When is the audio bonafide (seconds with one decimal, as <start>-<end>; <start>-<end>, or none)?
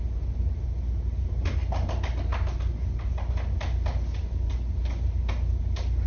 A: 0.0-6.1